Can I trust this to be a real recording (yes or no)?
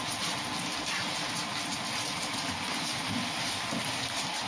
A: yes